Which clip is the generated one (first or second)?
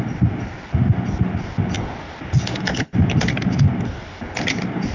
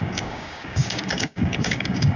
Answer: second